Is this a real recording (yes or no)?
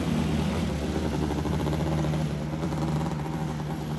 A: yes